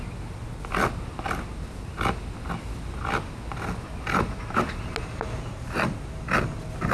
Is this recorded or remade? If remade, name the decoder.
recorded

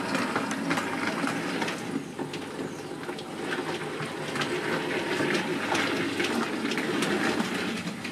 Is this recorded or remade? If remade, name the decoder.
recorded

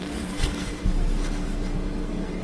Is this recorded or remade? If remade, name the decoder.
remade, codec, SNAC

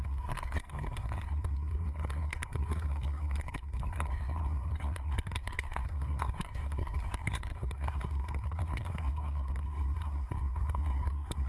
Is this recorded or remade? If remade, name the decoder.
remade, codec, SNAC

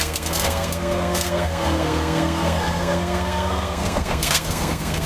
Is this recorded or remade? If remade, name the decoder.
remade, codec, SNAC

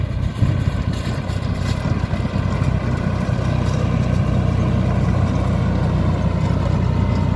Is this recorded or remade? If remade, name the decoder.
recorded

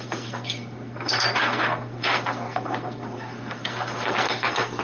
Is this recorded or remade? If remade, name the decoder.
remade, codec, SNAC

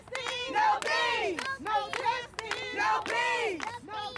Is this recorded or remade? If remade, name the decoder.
recorded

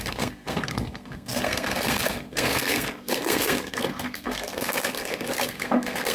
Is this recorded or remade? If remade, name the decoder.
remade, codec, SNAC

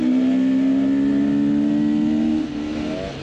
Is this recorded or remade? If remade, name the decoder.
recorded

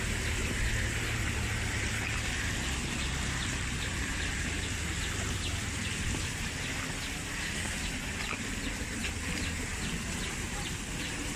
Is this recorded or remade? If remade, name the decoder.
recorded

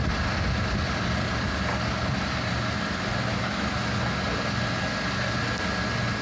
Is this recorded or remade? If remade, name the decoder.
recorded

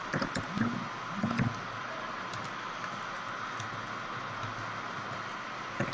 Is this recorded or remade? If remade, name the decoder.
recorded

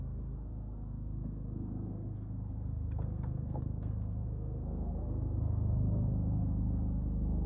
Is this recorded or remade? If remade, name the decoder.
remade, codec, SNAC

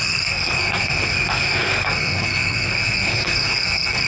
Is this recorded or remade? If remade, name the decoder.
remade, codec, SNAC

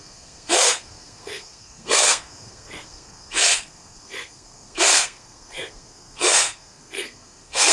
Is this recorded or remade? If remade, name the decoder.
remade, codec, SNAC